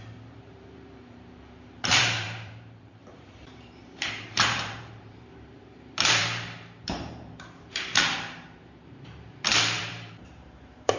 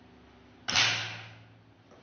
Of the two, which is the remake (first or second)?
first